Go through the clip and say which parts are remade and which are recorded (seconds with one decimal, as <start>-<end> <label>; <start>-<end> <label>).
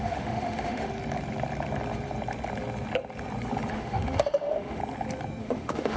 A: 0.0-0.9 remade; 0.9-3.7 recorded; 3.7-4.8 remade; 4.8-5.4 recorded; 5.4-6.0 remade